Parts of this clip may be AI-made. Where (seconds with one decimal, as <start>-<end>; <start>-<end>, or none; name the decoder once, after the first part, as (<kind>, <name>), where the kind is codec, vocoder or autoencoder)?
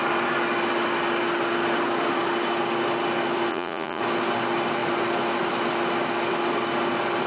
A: 3.5-4.0 (vocoder, Vocos)